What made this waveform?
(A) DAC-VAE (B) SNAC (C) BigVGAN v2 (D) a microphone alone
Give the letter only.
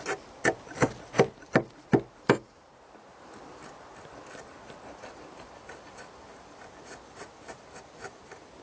D